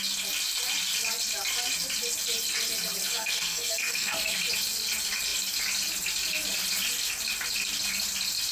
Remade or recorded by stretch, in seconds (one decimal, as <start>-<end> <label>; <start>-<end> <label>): 0.0-3.0 recorded; 3.0-4.4 remade; 4.4-8.5 recorded

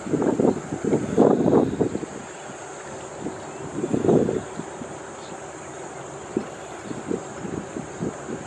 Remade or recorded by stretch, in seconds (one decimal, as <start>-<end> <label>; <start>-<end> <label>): 0.0-8.5 recorded